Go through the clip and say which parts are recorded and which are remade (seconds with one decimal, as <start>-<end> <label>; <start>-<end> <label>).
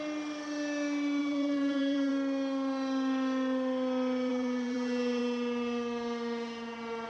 0.0-1.2 recorded; 1.2-2.1 remade; 2.1-4.3 recorded; 4.3-5.2 remade; 5.2-7.1 recorded